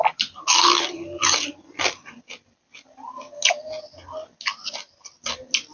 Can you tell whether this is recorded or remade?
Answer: recorded